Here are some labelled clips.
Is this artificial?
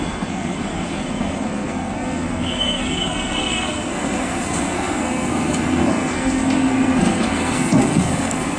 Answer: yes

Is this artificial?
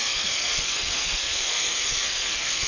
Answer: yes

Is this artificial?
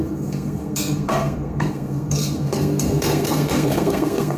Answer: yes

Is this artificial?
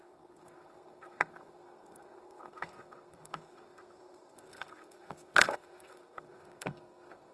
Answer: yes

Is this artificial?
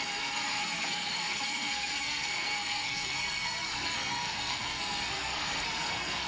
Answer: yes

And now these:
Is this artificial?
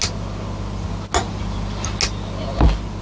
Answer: no